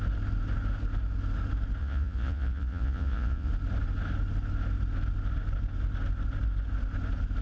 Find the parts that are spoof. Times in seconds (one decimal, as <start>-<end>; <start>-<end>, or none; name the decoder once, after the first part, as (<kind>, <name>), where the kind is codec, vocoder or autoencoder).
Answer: 1.8-3.5 (vocoder, Vocos)